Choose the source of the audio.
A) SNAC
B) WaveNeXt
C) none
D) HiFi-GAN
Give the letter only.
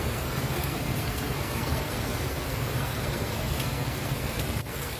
A